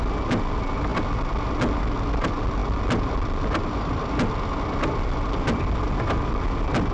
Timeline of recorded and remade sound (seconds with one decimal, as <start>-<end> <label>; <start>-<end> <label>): 0.0-6.9 recorded